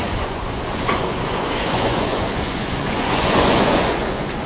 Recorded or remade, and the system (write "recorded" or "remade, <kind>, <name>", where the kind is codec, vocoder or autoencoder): remade, vocoder, Vocos